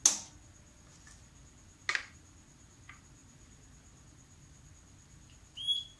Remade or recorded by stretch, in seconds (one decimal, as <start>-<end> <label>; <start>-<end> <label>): 0.0-6.0 recorded